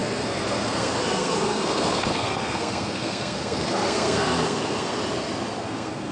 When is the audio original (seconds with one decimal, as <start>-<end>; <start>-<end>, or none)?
5.0-5.6